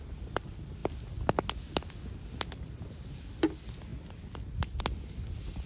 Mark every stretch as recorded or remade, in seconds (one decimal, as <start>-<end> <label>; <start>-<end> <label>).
0.0-5.7 recorded

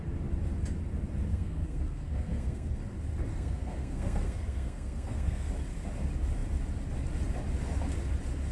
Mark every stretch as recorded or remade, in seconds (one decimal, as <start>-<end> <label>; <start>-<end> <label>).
0.0-1.3 recorded; 1.3-2.8 remade; 2.8-3.3 recorded; 3.3-5.5 remade; 5.5-8.5 recorded

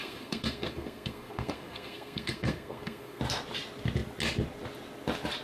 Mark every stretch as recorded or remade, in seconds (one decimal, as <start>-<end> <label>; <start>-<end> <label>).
0.0-3.2 remade; 3.2-5.4 recorded

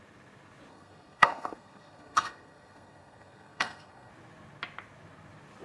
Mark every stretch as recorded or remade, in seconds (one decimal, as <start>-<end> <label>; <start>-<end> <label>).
0.0-0.7 recorded; 0.7-4.1 remade; 4.1-5.6 recorded

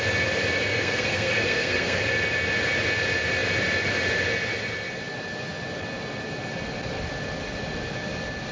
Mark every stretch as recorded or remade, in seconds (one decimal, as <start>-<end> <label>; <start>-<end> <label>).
0.0-0.7 recorded; 0.7-2.0 remade; 2.0-8.5 recorded

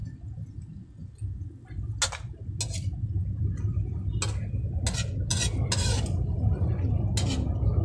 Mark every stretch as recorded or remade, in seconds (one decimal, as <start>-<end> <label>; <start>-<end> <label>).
0.0-7.8 recorded

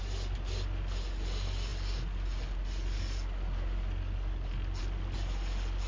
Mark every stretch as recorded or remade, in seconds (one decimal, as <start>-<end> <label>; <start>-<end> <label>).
0.0-5.9 recorded

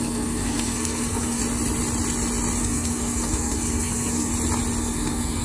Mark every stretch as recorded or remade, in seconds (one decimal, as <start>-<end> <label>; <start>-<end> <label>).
0.0-1.4 remade; 1.4-2.6 recorded; 2.6-4.3 remade; 4.3-4.8 recorded; 4.8-5.4 remade